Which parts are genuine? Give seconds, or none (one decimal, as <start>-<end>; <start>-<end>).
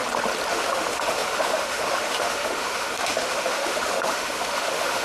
0.0-0.5